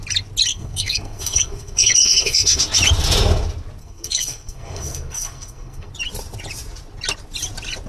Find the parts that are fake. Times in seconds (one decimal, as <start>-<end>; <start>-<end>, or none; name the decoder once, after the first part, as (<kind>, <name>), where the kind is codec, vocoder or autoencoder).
0.5-2.6 (codec, SNAC); 3.8-5.9